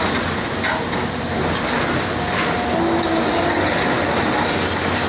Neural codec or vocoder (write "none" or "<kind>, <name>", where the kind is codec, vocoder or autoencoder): none